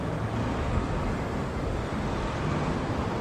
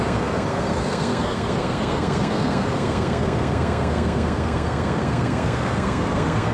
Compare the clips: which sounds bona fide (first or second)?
first